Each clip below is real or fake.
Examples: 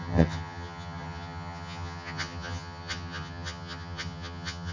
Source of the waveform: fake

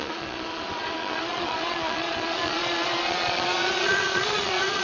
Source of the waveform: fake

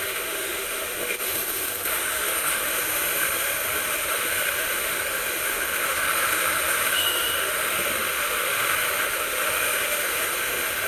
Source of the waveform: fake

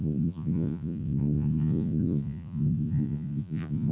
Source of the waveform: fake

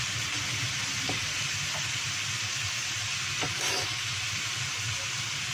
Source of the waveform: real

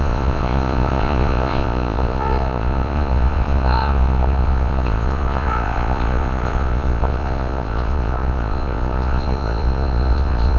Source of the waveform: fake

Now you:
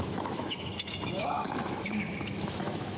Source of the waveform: fake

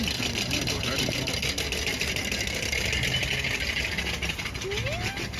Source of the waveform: real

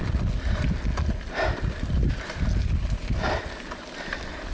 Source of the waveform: real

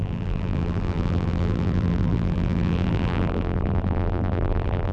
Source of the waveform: fake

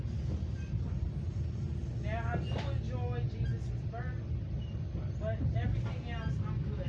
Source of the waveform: real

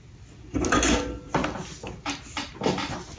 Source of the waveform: real